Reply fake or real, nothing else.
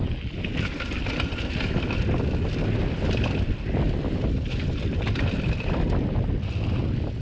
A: real